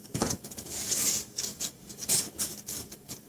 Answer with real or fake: fake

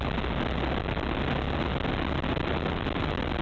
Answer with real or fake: real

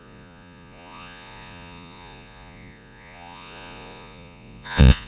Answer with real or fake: fake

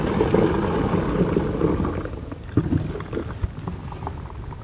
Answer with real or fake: real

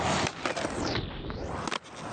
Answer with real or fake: real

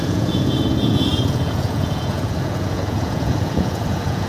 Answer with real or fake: fake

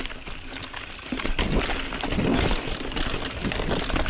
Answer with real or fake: real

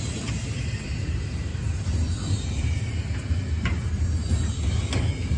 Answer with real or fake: real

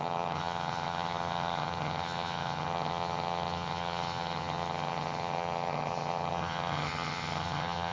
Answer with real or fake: fake